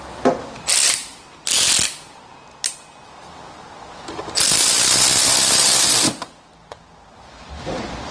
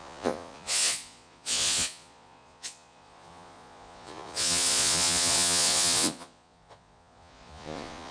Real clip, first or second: first